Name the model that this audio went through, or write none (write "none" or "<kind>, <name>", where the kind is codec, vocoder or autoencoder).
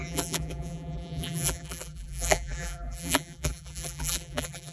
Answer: vocoder, BigVGAN v2